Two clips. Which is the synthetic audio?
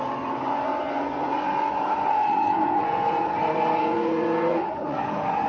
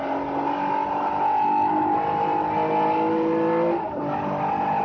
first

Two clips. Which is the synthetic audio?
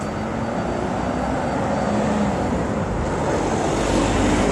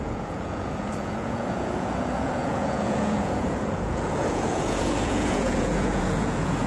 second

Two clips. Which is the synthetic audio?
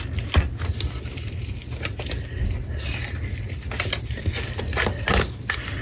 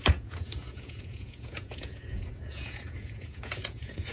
second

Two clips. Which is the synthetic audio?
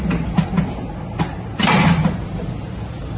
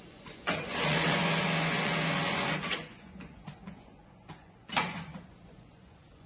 second